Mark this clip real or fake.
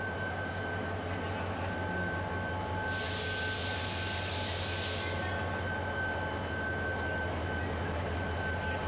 real